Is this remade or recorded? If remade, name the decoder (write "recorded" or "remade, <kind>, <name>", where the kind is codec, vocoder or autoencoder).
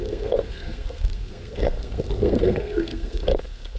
remade, codec, SNAC